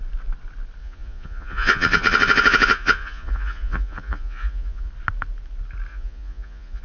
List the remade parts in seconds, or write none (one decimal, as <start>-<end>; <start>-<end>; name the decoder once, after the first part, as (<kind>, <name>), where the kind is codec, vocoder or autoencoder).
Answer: 0.8-4.9 (vocoder, Vocos); 5.9-6.8